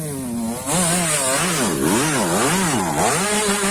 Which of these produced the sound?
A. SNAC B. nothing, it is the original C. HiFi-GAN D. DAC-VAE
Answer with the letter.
B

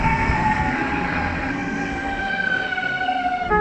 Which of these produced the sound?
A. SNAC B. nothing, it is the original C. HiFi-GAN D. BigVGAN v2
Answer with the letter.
A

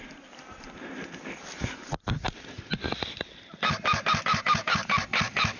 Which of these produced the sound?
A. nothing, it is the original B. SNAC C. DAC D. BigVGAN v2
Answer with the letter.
A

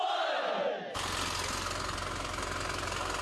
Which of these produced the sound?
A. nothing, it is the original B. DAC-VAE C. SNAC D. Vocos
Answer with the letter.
A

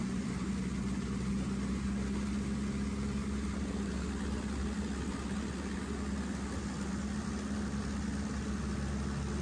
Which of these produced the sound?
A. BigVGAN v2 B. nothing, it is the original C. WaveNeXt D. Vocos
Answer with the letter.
B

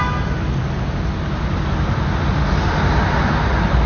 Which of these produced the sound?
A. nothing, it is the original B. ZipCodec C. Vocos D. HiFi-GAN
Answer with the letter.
A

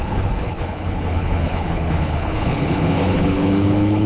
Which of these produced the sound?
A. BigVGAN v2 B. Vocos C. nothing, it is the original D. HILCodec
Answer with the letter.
D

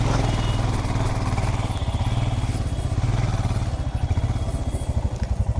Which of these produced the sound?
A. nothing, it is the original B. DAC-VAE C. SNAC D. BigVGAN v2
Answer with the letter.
A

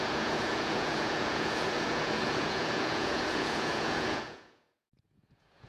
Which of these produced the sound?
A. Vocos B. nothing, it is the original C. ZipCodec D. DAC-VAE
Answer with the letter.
A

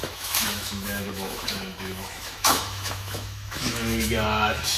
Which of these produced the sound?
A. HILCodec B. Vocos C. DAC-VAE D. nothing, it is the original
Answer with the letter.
C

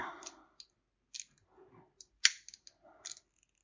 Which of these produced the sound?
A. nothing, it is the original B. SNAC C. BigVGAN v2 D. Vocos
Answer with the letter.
A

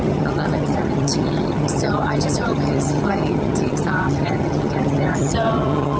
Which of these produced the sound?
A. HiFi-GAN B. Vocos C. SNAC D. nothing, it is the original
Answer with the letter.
A